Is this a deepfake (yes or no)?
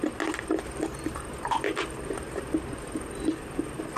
yes